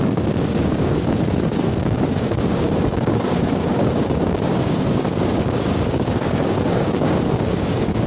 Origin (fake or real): fake